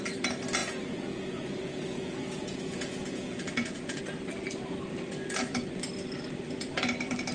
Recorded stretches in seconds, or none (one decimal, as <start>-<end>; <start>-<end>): 0.0-0.6; 4.0-7.3

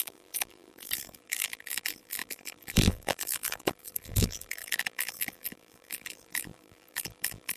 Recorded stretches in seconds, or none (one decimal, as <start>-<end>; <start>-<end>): none

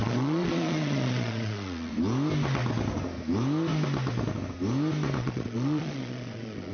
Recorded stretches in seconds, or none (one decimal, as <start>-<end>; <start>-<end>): 1.9-5.2

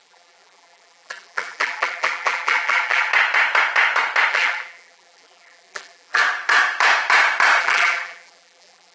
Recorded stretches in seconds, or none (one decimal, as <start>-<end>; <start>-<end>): 3.1-4.3; 6.2-7.6

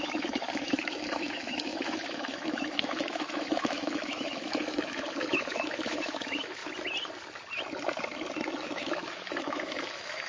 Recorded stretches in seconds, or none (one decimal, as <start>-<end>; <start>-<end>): 6.6-8.6